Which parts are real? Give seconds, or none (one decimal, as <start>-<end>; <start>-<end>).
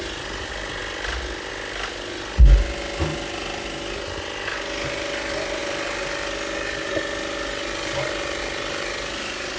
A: 0.0-9.6